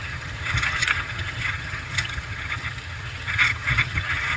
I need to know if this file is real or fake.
fake